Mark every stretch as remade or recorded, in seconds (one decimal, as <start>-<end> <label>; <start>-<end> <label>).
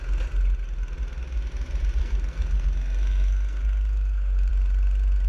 0.0-2.0 recorded; 2.0-4.5 remade; 4.5-5.3 recorded